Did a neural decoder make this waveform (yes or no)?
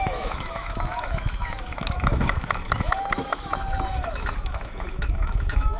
yes